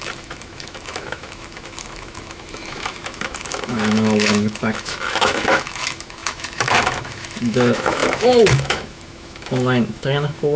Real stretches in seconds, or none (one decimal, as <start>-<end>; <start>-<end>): none